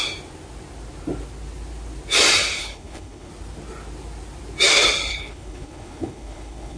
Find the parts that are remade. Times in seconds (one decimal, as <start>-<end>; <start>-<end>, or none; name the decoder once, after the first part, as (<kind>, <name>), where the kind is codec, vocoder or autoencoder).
2.6-3.3 (codec, HILCodec); 5.1-6.8